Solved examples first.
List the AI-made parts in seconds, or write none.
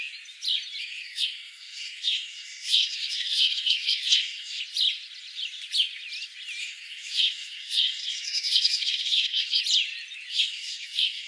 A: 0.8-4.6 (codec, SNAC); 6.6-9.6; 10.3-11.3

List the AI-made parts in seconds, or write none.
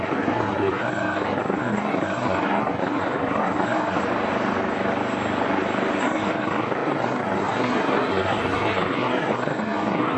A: 0.0-4.0 (codec, SNAC); 6.0-10.2